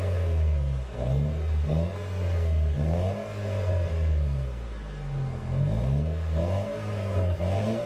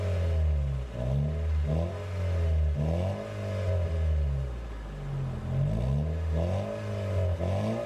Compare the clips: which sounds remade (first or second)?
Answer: first